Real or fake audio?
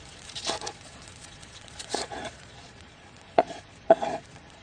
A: fake